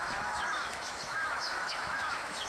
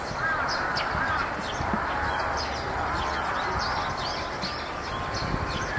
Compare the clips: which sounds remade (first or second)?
first